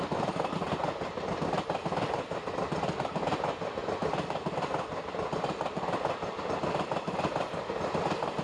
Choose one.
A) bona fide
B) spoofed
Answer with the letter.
B